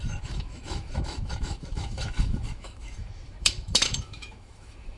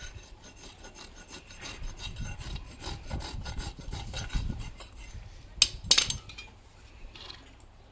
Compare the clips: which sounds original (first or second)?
second